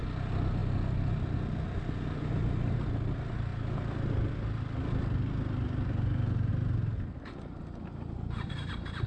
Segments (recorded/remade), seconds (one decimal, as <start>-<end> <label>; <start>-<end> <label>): 0.0-9.1 recorded